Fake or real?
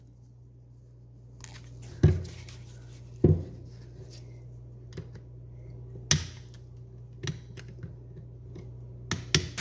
real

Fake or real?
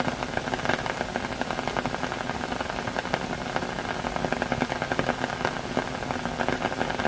real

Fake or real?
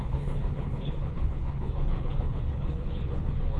fake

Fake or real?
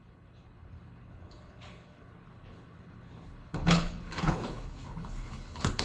fake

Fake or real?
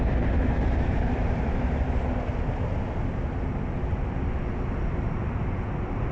real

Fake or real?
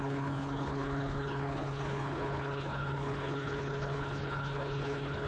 fake